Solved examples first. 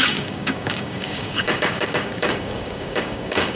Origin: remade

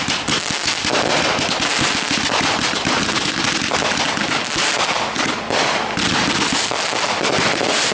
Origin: remade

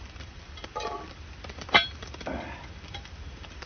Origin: remade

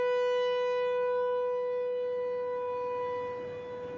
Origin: recorded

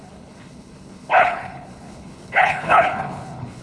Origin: remade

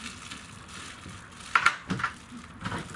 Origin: recorded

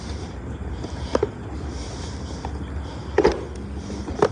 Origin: recorded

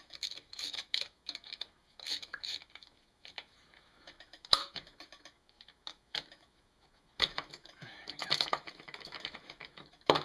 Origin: remade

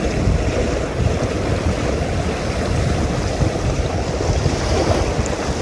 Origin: recorded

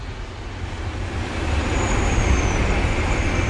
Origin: recorded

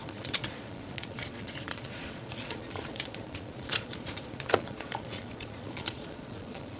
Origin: remade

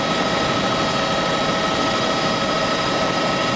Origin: recorded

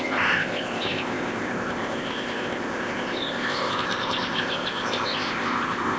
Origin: remade